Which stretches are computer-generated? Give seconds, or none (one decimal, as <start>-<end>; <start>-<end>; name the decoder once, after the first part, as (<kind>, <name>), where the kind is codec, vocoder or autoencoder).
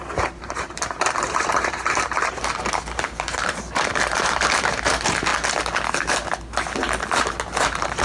0.0-5.3 (vocoder, BigVGAN v2); 7.6-8.0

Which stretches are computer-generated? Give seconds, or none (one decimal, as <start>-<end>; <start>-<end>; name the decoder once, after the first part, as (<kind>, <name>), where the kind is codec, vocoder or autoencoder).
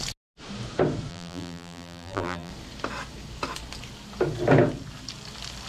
1.1-2.5 (vocoder, BigVGAN v2)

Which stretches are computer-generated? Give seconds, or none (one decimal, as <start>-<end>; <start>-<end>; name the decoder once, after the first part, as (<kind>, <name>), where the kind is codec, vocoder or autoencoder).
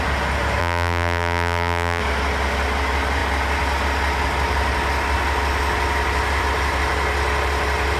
0.6-2.0 (vocoder, BigVGAN v2)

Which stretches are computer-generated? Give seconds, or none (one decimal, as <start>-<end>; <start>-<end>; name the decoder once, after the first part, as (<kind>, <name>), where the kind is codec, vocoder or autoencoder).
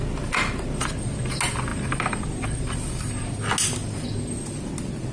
1.7-3.3 (vocoder, BigVGAN v2)